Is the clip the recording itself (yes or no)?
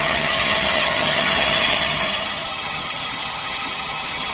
no